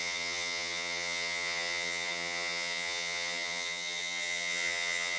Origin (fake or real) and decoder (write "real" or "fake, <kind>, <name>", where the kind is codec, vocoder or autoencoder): fake, vocoder, HiFi-GAN